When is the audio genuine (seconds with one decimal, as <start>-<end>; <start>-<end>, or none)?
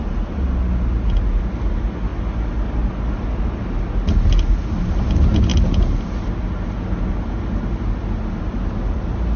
0.0-9.4